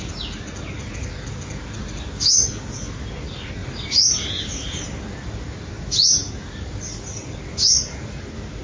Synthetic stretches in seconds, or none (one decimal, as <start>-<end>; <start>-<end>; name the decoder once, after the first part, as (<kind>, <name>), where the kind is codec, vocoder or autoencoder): none